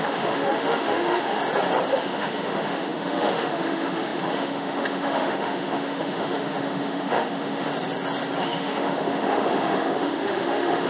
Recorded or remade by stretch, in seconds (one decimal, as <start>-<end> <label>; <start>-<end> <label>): 0.0-1.4 remade; 1.4-1.9 recorded; 1.9-7.7 remade; 7.7-8.4 recorded; 8.4-10.9 remade